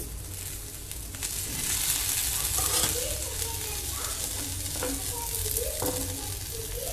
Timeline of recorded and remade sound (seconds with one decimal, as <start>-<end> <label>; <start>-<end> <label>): 0.0-6.9 recorded